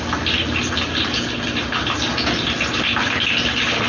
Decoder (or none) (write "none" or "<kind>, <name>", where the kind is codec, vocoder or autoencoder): none